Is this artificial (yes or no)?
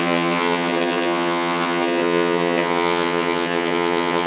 yes